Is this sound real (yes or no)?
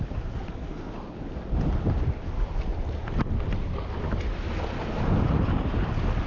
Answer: yes